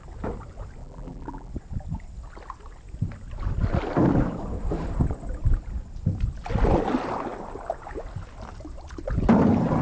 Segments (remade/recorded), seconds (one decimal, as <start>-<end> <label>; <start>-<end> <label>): 0.0-0.8 recorded; 0.8-1.5 remade; 1.5-9.8 recorded